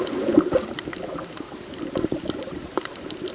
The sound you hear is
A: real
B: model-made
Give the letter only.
A